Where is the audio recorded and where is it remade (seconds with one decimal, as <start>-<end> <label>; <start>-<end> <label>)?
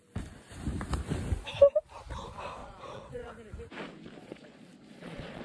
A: 0.0-2.6 recorded; 2.6-3.3 remade; 3.3-4.2 recorded; 4.2-5.4 remade